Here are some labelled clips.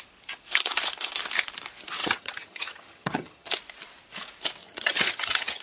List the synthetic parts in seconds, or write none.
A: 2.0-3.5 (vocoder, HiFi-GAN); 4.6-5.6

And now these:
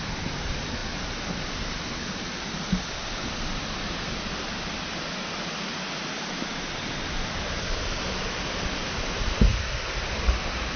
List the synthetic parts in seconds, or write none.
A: none

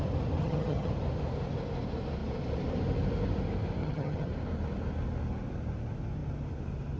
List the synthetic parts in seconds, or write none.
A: 0.4-0.9 (vocoder, HiFi-GAN); 3.8-4.3

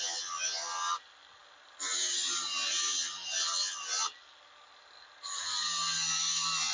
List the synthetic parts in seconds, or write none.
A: none

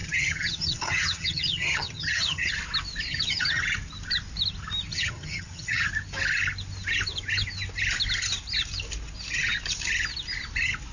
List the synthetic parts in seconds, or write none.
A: 0.0-2.5 (vocoder, HiFi-GAN); 3.1-3.6; 4.9-5.9

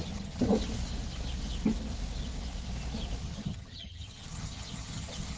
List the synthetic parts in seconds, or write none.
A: 0.0-0.5 (vocoder, HiFi-GAN); 3.2-5.4

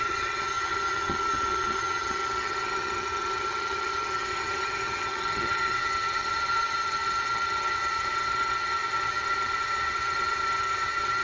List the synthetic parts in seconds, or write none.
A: 0.0-11.2 (vocoder, HiFi-GAN)

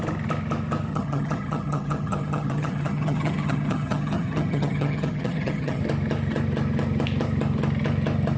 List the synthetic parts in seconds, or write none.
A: 0.9-5.8 (vocoder, HiFi-GAN)